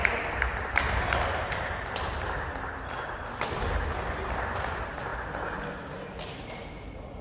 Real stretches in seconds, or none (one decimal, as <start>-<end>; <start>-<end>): 4.3-7.2